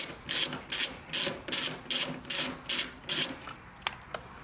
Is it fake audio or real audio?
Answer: real